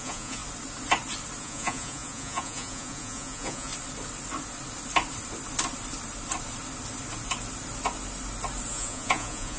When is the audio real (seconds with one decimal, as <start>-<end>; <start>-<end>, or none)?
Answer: 0.4-1.4; 3.7-8.7